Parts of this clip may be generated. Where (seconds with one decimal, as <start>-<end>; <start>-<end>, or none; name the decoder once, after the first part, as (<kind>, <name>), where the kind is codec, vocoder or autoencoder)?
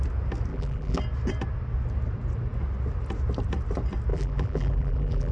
0.5-1.0 (vocoder, BigVGAN v2); 4.1-5.3